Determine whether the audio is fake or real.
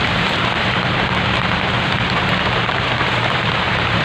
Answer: fake